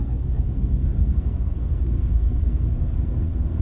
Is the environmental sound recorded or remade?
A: remade